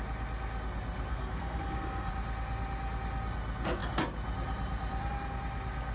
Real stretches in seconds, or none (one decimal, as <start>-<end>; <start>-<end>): 0.0-1.1; 2.1-5.9